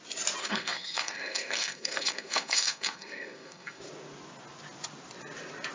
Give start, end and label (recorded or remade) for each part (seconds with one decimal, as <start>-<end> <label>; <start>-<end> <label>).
0.0-0.4 recorded; 0.4-3.8 remade; 3.8-5.7 recorded